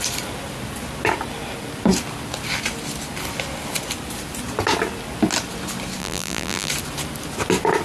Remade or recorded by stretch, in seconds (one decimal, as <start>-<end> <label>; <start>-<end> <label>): 0.0-6.0 recorded; 6.0-6.7 remade; 6.7-7.8 recorded